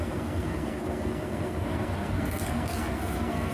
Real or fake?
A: fake